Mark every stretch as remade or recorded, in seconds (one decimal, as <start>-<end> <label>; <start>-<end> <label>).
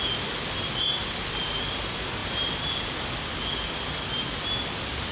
0.0-5.1 recorded